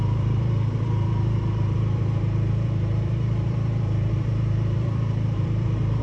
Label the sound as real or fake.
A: fake